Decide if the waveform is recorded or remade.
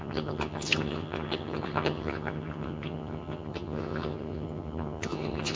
remade